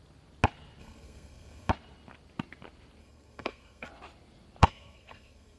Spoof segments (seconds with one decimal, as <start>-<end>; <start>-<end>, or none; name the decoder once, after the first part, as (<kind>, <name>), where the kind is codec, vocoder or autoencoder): 0.8-1.7 (codec, SNAC); 3.0-3.9; 4.6-5.6